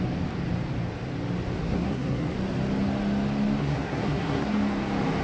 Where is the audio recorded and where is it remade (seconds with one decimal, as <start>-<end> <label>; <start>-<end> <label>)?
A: 0.0-1.6 recorded; 1.6-2.3 remade; 2.3-3.6 recorded; 3.6-4.6 remade; 4.6-5.2 recorded